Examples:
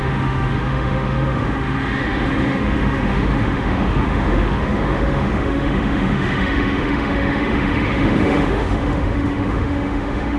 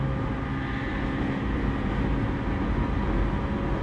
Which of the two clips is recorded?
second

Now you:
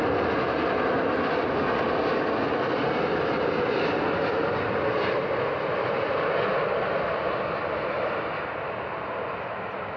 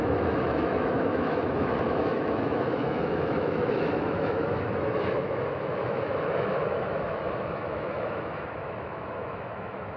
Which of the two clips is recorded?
first